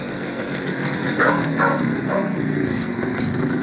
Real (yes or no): no